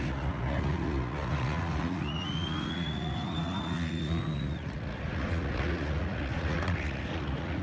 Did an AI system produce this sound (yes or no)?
yes